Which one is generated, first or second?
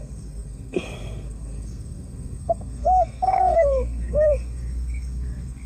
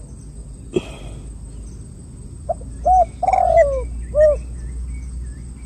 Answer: first